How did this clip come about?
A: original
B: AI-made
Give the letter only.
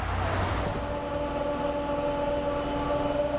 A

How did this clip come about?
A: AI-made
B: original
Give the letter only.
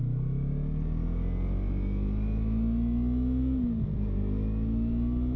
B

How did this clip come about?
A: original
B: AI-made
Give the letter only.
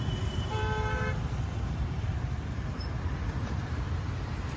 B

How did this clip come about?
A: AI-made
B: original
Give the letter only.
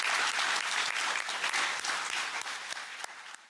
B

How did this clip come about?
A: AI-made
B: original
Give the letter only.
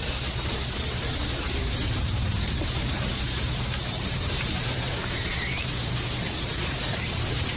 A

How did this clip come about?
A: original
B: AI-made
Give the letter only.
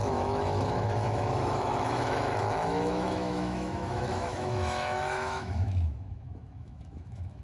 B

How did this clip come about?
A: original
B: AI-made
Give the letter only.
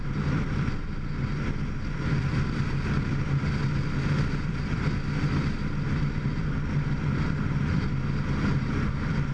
B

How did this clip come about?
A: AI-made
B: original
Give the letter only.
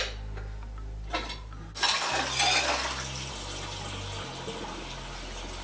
B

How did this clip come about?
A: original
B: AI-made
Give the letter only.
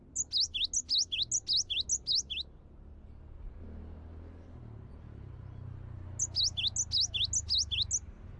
A